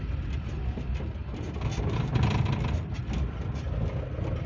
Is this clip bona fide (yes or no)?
yes